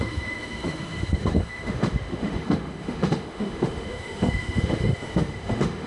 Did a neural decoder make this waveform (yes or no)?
yes